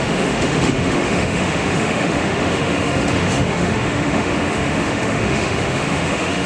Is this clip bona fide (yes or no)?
no